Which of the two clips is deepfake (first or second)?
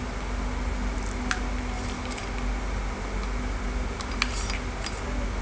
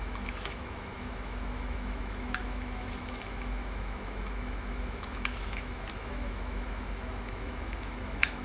second